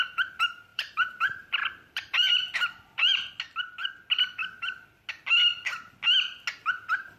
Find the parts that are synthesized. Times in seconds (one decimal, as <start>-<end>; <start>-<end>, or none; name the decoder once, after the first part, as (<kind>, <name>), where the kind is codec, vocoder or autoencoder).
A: 0.7-3.3 (vocoder, BigVGAN v2)